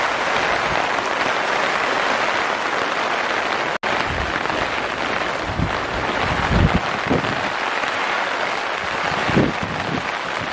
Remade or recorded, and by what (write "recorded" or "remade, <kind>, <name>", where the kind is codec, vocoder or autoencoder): recorded